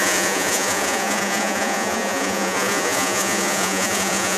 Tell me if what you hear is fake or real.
fake